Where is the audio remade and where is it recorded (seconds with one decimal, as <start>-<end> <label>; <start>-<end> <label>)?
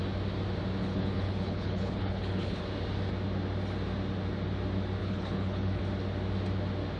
0.0-0.8 recorded; 0.8-2.6 remade; 2.6-5.0 recorded; 5.0-5.8 remade; 5.8-7.0 recorded